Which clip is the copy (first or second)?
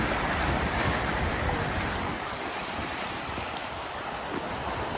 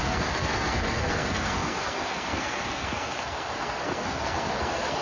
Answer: second